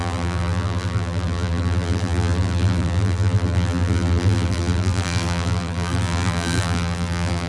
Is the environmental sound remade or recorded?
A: remade